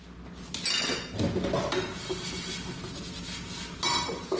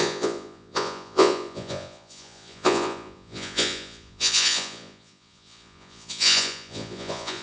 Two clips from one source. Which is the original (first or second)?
first